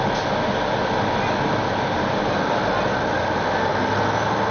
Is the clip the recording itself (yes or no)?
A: yes